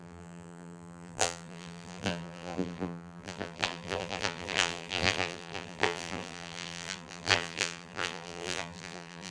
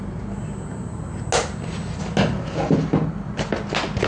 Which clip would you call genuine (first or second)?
second